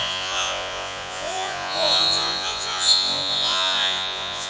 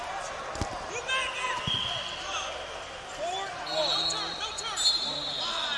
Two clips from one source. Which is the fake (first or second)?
first